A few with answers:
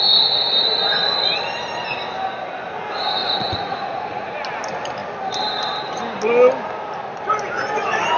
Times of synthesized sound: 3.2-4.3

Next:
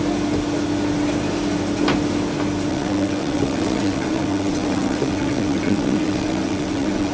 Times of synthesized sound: 2.7-7.1